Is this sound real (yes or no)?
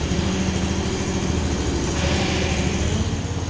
yes